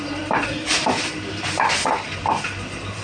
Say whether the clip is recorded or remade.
recorded